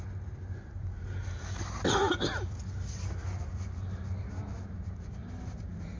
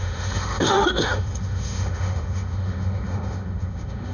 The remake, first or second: second